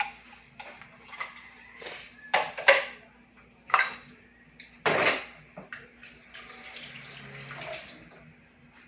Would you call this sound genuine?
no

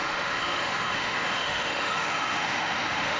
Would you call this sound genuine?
no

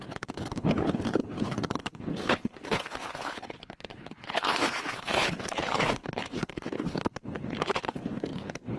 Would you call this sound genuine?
no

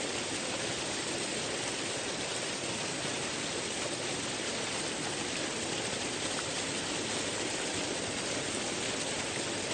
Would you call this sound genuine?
yes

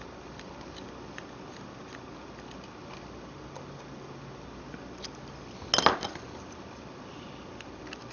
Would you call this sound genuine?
yes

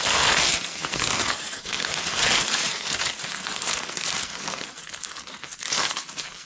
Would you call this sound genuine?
no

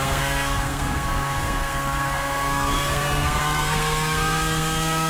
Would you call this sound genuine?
no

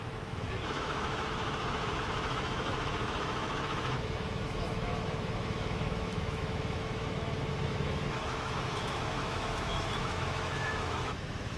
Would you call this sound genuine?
no